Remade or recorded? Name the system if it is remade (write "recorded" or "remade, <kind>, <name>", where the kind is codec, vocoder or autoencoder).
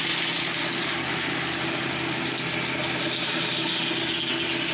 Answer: recorded